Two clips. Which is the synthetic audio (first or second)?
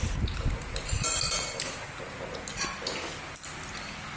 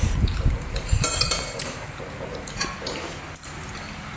second